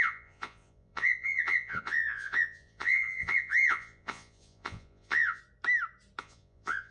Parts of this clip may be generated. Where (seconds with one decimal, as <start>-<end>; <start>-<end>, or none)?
0.0-5.4; 6.2-6.9